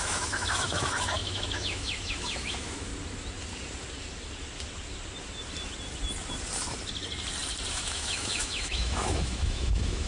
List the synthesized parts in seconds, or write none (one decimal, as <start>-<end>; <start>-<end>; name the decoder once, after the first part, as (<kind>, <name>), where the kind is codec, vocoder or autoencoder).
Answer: 0.0-2.9 (autoencoder, DAC-VAE); 7.7-10.1